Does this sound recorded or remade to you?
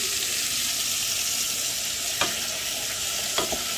recorded